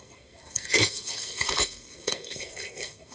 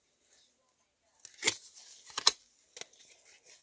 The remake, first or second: first